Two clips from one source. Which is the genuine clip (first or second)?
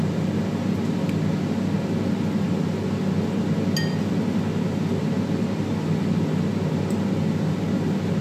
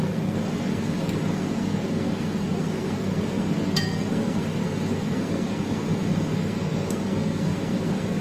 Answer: first